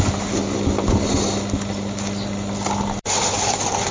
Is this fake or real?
real